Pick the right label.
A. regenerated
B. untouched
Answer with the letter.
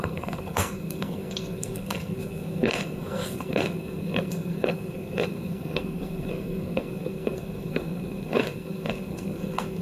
A